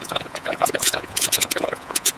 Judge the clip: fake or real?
fake